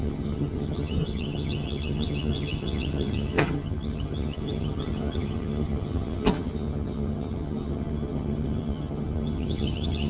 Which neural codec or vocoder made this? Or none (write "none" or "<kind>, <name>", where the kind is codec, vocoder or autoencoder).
vocoder, HiFi-GAN